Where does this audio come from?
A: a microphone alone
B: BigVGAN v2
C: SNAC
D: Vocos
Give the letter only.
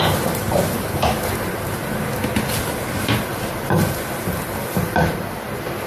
A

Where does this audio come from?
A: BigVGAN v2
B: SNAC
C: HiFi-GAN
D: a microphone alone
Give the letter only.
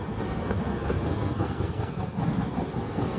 B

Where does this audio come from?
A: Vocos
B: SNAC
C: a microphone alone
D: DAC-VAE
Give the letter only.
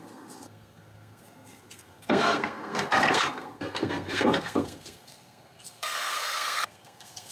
B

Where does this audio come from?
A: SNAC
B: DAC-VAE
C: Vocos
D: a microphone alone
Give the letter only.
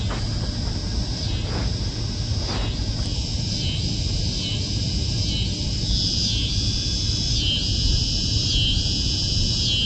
D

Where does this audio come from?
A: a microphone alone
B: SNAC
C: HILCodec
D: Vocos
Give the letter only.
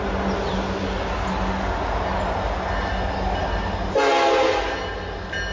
A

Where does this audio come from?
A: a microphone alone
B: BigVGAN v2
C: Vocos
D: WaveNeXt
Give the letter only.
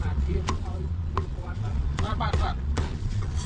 C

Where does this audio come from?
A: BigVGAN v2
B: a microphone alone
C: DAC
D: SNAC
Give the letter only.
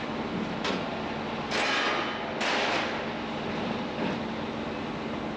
B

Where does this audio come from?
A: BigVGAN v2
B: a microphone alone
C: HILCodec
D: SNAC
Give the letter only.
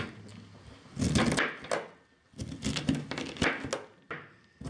B